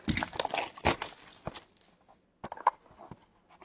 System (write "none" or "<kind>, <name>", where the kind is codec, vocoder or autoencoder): none